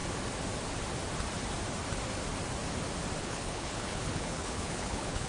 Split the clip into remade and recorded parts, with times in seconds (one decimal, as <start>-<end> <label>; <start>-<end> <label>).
0.0-3.2 recorded; 3.2-5.3 remade